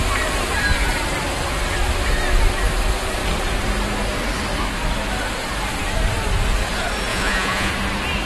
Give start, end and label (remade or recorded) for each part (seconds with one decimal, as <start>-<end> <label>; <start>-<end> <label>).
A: 0.0-7.1 recorded; 7.1-7.7 remade; 7.7-8.3 recorded